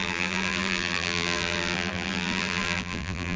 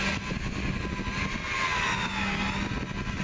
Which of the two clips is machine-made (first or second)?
first